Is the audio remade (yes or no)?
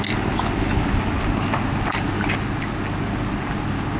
no